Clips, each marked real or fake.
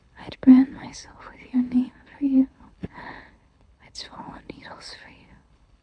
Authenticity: fake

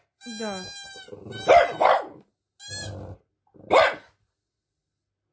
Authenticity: real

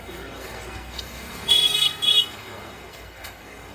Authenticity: fake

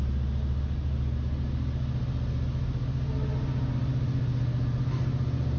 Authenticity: real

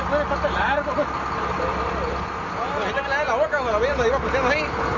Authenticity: real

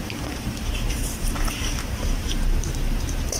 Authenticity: fake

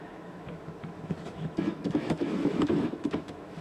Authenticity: fake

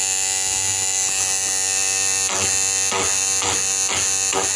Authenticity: real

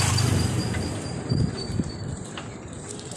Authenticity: fake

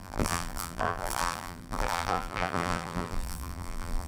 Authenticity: fake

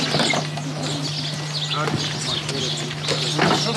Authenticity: real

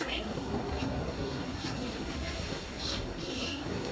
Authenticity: fake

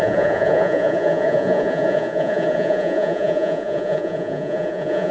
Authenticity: fake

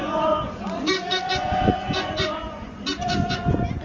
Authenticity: fake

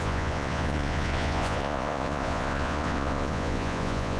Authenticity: fake